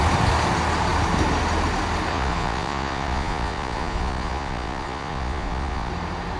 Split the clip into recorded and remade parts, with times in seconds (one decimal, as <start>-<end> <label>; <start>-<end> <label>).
0.0-2.1 recorded; 2.1-5.9 remade; 5.9-6.4 recorded